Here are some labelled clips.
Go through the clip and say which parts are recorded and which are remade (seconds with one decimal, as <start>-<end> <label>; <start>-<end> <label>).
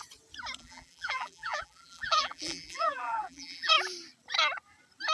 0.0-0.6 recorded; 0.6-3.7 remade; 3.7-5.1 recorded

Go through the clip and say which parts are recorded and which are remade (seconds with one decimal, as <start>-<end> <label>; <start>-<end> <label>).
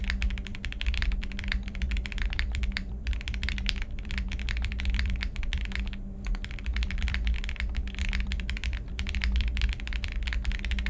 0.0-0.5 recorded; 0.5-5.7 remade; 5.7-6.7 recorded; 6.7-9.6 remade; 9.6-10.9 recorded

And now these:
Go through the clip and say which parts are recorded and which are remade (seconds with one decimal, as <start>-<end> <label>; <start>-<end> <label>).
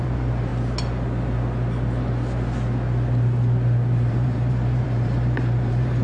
0.0-0.5 remade; 0.5-4.1 recorded; 4.1-6.0 remade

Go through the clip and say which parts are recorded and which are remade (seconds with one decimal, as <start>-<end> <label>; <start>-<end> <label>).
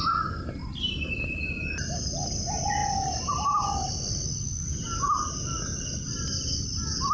0.0-7.1 recorded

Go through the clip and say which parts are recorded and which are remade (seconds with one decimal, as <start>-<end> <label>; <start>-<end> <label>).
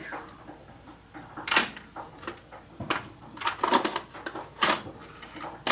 0.0-3.4 remade; 3.4-5.7 recorded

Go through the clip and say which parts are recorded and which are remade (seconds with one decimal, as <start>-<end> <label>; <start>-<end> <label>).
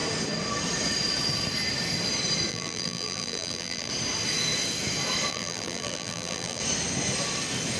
0.0-2.5 recorded; 2.5-3.9 remade; 3.9-5.3 recorded; 5.3-6.6 remade; 6.6-7.8 recorded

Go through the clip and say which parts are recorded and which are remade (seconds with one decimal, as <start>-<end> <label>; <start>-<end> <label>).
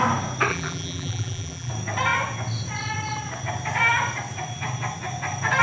0.0-0.5 recorded; 0.5-1.7 remade; 1.7-5.6 recorded